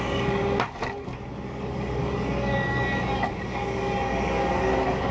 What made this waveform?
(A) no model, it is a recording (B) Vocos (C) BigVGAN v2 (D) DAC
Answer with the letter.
D